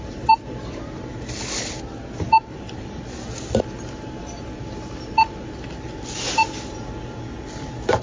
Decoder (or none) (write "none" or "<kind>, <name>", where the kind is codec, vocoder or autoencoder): none